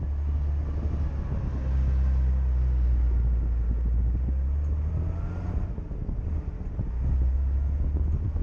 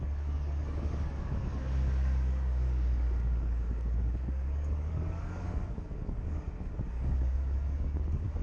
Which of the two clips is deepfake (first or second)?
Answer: second